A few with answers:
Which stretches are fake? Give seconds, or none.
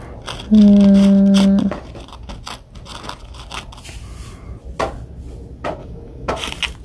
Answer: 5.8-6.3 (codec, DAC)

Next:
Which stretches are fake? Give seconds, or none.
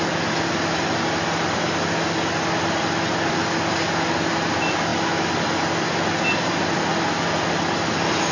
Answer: none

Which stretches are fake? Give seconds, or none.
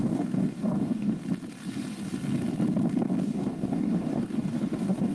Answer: 0.0-1.2 (codec, DAC); 3.2-5.1